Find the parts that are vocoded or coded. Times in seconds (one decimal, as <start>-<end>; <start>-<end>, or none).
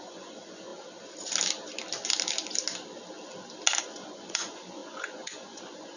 0.0-0.7; 3.8-6.0